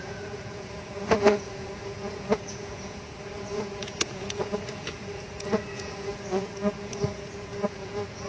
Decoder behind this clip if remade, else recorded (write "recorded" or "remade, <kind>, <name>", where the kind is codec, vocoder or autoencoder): remade, vocoder, Vocos